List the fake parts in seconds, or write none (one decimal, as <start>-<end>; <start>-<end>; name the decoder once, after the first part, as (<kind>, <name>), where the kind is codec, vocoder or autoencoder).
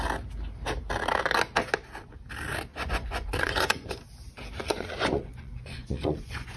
2.7-4.0 (vocoder, Vocos); 4.6-6.6